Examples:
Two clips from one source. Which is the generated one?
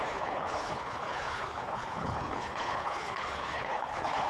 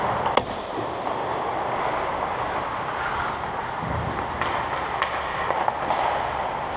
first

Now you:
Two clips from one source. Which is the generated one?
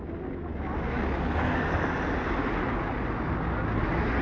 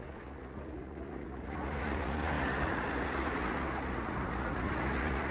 second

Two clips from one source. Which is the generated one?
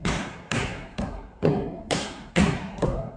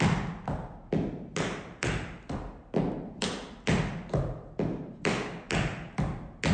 first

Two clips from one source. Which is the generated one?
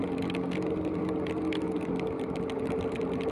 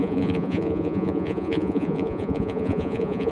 second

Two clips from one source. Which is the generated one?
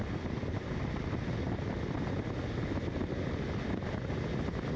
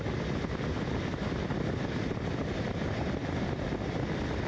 second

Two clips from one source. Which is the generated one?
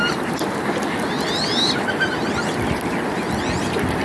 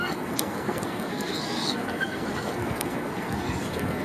second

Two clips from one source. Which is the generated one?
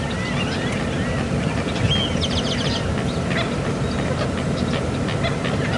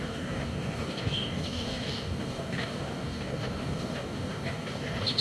second